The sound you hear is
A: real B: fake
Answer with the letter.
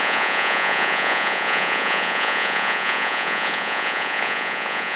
B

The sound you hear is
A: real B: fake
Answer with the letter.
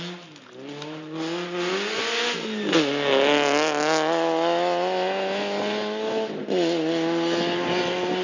A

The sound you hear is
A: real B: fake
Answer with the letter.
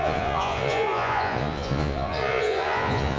B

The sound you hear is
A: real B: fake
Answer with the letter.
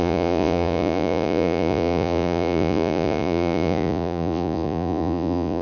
B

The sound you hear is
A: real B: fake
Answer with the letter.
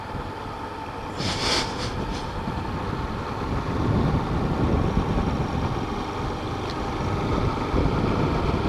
A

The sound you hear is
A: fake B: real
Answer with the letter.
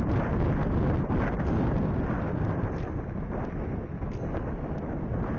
B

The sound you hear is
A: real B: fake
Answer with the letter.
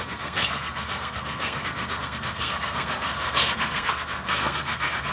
B